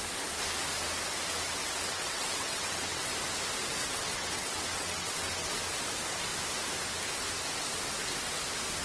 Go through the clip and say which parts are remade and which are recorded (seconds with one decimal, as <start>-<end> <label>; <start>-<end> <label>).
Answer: 0.0-1.6 recorded; 1.6-3.1 remade; 3.1-3.8 recorded; 3.8-5.6 remade; 5.6-8.8 recorded